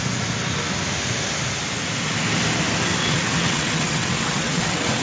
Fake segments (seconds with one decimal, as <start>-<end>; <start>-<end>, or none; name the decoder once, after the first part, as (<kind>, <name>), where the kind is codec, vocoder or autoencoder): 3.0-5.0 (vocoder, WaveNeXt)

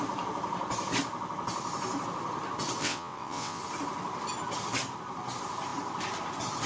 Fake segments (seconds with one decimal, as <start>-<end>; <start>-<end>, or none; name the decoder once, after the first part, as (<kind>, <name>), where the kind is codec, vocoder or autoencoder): 2.8-3.6 (vocoder, WaveNeXt)

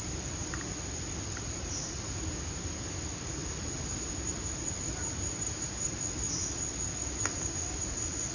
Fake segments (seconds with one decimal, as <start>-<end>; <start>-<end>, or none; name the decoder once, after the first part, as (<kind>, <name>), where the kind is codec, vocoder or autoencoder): none

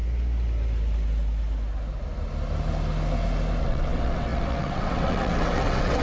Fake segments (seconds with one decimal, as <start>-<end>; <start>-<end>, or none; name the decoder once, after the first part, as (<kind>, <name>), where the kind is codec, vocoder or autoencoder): 3.6-6.0 (vocoder, WaveNeXt)